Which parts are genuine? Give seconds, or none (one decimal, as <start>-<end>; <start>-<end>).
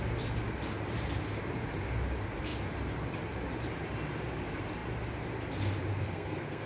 0.0-5.9